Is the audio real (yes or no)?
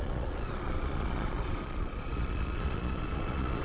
no